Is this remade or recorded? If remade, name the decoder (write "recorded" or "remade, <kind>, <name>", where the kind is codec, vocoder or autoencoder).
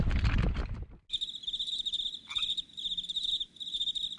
recorded